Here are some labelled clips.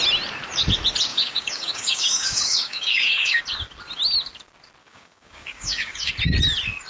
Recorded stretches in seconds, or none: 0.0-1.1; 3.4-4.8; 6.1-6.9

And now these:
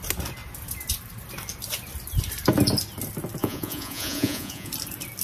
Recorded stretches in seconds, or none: 0.0-3.4; 4.7-5.2

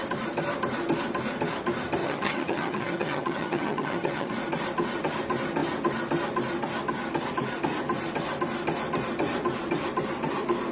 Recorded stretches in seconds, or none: 0.0-2.0; 4.3-10.7

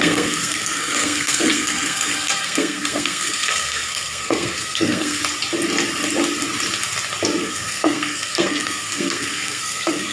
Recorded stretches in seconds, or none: 5.2-7.4